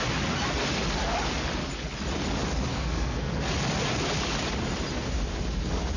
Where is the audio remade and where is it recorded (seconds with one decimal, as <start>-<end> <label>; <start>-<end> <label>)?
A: 0.0-2.7 recorded; 2.7-3.5 remade; 3.5-6.0 recorded